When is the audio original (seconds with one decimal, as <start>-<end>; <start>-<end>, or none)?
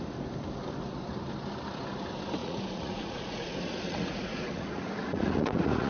0.0-2.4